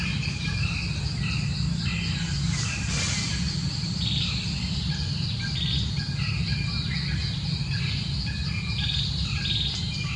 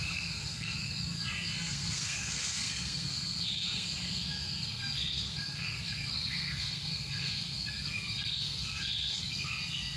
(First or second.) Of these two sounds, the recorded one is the first